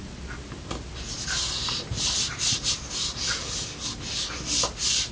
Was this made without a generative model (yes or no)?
yes